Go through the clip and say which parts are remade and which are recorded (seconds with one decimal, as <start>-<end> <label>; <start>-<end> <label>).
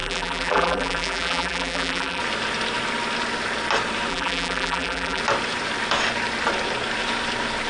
0.0-2.2 remade; 2.2-4.1 recorded; 4.1-5.2 remade; 5.2-7.7 recorded